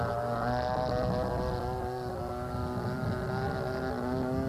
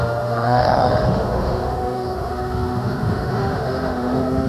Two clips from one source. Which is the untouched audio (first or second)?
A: first